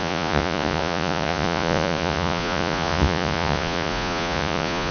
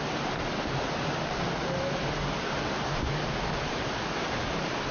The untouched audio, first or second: second